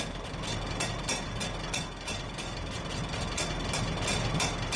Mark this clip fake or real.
real